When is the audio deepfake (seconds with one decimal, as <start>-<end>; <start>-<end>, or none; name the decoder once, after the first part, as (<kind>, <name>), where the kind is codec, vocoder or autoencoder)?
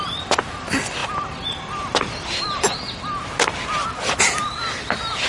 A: none